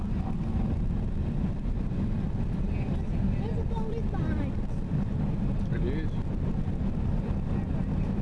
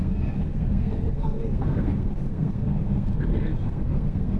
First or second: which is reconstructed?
second